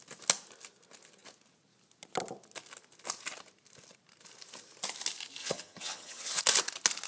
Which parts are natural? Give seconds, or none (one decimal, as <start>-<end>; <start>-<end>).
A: 0.0-5.4; 6.4-7.1